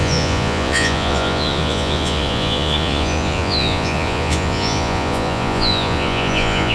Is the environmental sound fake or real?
fake